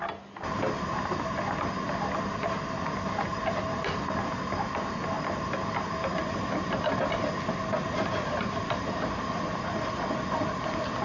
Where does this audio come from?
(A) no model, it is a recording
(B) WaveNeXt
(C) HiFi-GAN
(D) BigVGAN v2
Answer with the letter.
A